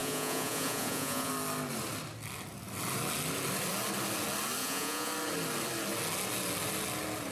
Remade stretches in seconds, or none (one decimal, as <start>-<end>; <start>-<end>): 0.0-1.3; 4.6-5.1